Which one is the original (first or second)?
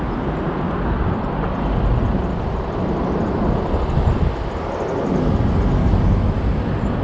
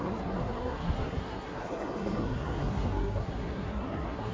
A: first